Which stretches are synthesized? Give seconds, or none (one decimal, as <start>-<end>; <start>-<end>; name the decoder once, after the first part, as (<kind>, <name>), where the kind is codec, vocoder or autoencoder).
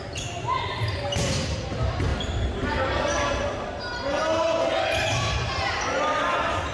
2.1-3.0 (vocoder, BigVGAN v2)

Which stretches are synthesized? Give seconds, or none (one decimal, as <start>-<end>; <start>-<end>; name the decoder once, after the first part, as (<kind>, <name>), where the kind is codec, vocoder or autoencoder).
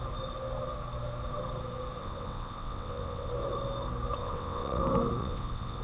2.0-3.3 (vocoder, WaveNeXt); 4.2-4.8; 5.2-5.8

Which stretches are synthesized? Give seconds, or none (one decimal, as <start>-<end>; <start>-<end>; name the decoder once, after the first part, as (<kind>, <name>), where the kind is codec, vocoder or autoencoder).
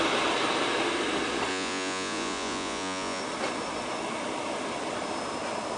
1.5-3.2 (vocoder, Vocos)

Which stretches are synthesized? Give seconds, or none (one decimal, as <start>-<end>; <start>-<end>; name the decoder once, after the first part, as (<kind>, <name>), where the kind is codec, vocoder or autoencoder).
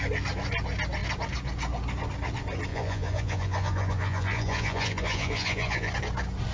2.7-5.9 (vocoder, Vocos)